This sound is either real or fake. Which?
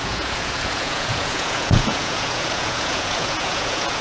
fake